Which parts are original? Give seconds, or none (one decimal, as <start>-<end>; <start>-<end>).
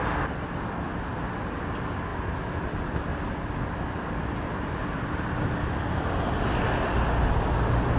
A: 0.0-8.0